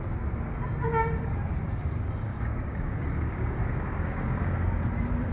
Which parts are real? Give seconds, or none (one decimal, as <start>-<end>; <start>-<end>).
0.0-2.3; 4.8-5.3